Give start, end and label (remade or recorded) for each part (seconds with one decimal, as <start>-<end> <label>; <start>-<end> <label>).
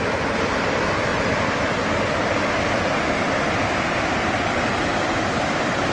0.0-5.9 recorded